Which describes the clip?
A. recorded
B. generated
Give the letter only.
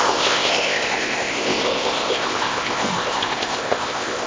B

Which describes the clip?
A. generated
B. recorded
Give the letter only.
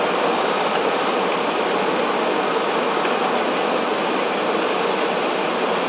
B